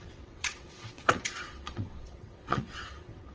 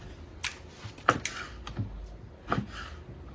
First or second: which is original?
second